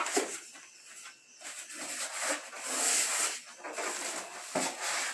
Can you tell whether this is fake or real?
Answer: real